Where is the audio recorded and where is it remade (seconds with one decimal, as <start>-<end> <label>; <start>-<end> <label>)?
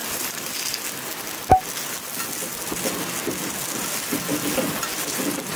0.0-0.6 remade; 0.6-5.6 recorded